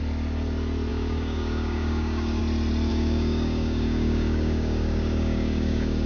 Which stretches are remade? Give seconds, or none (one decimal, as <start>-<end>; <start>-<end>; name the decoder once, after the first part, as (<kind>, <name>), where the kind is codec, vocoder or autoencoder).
0.9-2.4 (codec, DAC); 2.9-6.1